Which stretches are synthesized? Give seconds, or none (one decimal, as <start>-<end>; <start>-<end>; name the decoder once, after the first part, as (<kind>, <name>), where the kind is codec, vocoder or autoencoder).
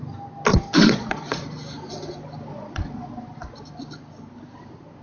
0.5-1.4 (vocoder, Vocos); 2.5-3.1